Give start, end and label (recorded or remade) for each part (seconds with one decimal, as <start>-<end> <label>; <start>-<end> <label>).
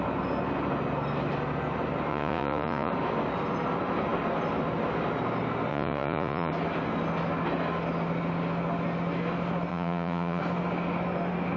0.0-2.1 recorded; 2.1-2.9 remade; 2.9-5.7 recorded; 5.7-6.5 remade; 6.5-9.7 recorded; 9.7-10.4 remade; 10.4-11.6 recorded